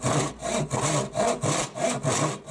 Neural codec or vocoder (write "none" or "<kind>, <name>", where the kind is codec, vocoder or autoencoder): none